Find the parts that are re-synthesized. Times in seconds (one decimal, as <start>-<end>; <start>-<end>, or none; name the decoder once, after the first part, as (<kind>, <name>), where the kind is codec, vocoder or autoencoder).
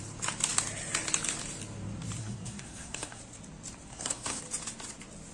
2.2-3.2 (codec, SNAC); 3.9-4.4